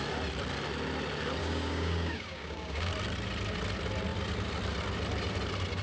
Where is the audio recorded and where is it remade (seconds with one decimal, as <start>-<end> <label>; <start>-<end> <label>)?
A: 0.0-1.4 recorded; 1.4-2.9 remade; 2.9-5.8 recorded